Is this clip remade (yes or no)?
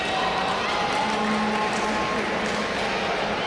no